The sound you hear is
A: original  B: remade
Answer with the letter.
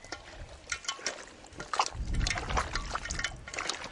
A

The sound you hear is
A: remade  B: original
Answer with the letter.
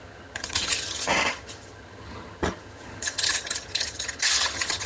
A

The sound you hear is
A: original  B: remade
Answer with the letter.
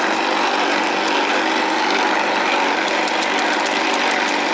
A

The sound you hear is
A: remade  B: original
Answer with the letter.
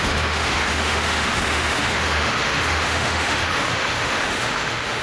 A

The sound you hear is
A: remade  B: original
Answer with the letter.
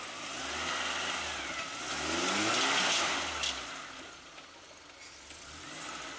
B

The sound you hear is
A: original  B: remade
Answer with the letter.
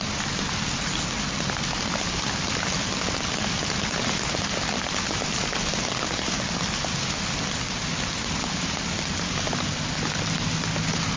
A